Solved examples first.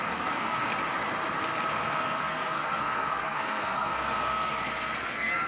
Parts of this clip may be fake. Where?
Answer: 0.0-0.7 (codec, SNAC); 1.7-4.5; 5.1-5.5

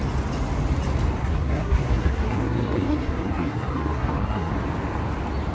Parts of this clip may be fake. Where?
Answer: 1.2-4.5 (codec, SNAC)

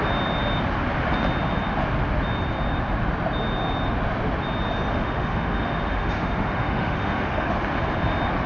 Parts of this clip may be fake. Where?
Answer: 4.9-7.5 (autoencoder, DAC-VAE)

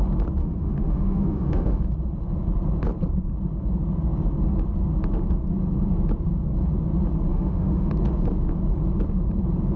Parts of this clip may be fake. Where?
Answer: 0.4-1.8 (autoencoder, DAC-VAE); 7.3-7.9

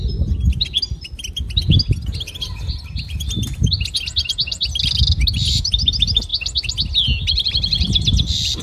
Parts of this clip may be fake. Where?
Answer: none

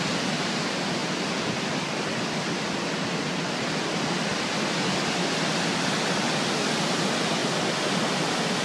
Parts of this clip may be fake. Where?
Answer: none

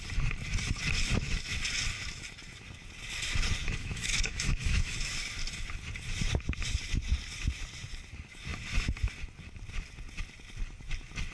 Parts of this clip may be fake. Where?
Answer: 3.6-5.1 (autoencoder, DAC-VAE)